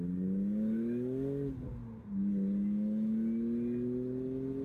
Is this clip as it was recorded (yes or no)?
yes